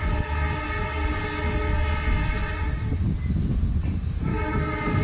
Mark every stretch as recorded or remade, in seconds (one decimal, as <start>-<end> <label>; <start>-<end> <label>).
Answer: 0.0-4.3 recorded; 4.3-5.0 remade